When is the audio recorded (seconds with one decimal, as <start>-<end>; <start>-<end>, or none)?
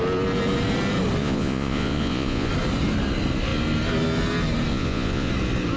0.0-1.2; 2.5-4.7; 5.3-5.8